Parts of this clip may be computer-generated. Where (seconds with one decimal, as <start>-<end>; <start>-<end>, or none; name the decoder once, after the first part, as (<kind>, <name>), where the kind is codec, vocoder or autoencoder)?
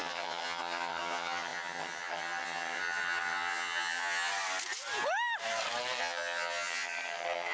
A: 0.0-4.3 (vocoder, HiFi-GAN); 6.0-7.5